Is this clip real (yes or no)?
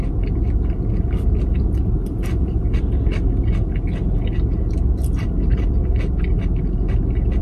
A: yes